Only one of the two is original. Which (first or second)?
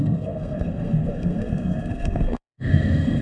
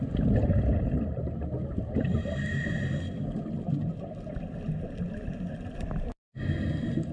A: second